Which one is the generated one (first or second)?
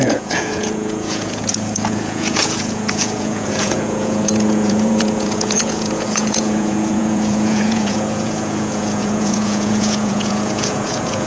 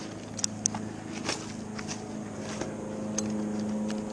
first